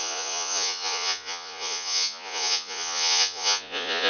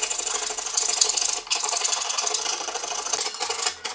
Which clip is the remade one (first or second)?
first